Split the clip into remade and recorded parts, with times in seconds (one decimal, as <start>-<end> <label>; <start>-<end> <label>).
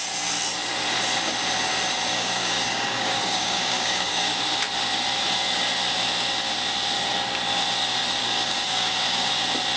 0.0-2.1 recorded; 2.1-4.4 remade; 4.4-8.2 recorded; 8.2-9.3 remade; 9.3-9.8 recorded